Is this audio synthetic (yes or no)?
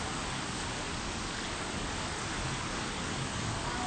yes